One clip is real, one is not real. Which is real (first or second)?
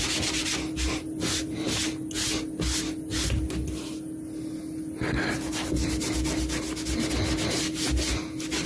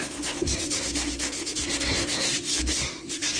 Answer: first